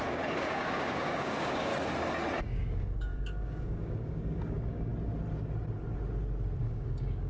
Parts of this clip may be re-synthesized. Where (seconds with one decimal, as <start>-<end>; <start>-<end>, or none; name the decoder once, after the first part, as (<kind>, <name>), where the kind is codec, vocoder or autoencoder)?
0.0-1.7 (codec, DAC); 2.4-4.9; 6.6-7.3